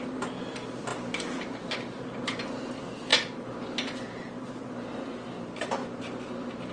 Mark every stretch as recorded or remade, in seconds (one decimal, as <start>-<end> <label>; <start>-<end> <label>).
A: 0.0-5.8 recorded; 5.8-6.7 remade